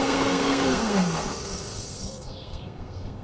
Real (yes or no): no